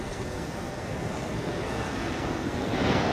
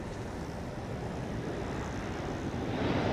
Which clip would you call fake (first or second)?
first